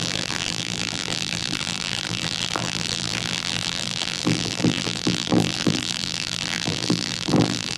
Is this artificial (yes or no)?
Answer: yes